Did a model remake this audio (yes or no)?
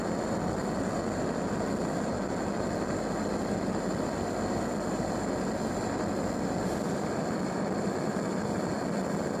no